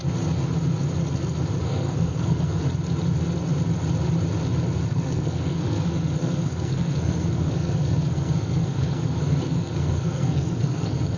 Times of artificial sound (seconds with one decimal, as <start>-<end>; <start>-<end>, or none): 1.6-2.6; 4.9-11.2